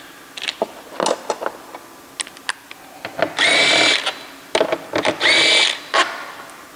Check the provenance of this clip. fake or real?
real